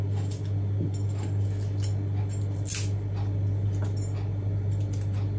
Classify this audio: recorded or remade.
recorded